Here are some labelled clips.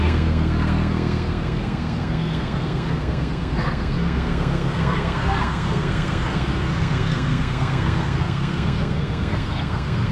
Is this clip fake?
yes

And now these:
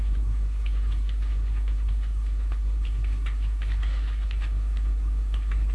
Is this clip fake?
yes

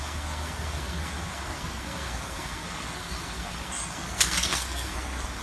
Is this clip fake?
yes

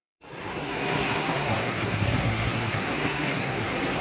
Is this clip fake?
yes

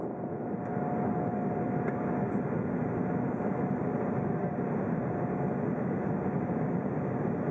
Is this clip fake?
no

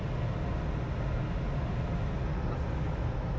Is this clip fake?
no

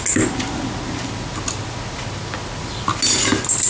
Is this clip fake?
no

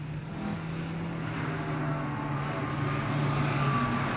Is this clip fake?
no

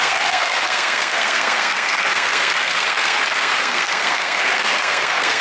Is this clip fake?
yes